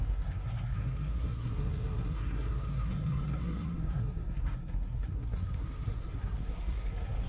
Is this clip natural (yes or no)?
no